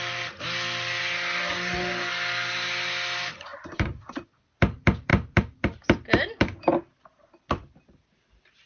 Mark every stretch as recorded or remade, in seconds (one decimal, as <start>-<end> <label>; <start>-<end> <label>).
0.0-3.5 recorded; 3.5-4.2 remade; 4.2-8.7 recorded